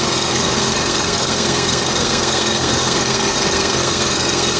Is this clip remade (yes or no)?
yes